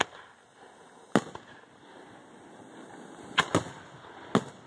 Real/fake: real